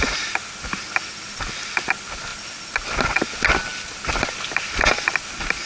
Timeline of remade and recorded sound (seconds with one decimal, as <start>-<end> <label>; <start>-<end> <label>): 0.0-5.7 recorded